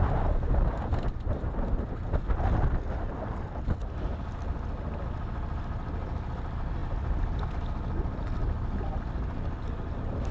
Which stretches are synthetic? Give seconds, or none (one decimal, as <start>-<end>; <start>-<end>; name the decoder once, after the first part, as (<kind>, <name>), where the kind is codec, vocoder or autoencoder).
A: none